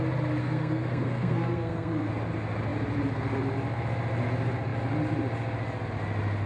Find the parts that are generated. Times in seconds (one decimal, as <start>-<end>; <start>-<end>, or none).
0.4-2.1